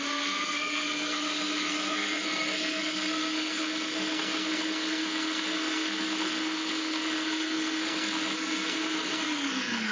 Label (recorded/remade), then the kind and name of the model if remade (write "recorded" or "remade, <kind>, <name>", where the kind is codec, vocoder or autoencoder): remade, codec, SNAC